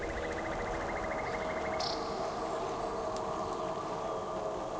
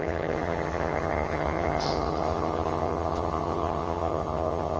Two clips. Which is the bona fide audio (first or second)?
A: first